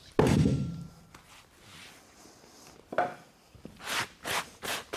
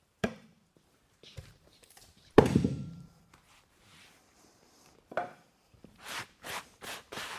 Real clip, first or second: first